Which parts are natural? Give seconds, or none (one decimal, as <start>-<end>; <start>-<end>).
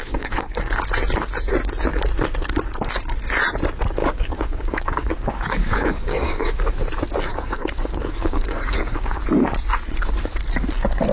0.8-4.0; 6.6-7.3; 9.2-11.1